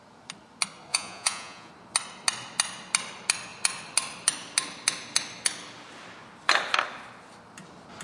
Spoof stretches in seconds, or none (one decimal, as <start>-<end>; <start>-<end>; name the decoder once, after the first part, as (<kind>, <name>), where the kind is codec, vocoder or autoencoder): 0.9-1.7 (vocoder, Vocos)